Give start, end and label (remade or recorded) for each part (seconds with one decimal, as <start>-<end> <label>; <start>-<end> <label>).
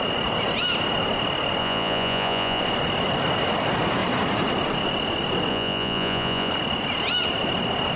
0.0-1.6 recorded; 1.6-2.6 remade; 2.6-5.5 recorded; 5.5-6.5 remade; 6.5-8.0 recorded